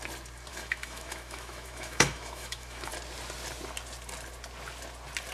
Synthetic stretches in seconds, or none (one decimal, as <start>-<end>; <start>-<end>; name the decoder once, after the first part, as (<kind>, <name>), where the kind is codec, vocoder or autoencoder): 0.5-2.9 (autoencoder, DAC-VAE)